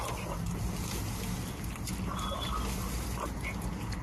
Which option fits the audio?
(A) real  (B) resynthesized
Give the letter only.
A